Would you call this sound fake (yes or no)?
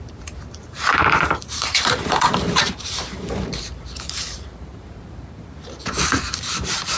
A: yes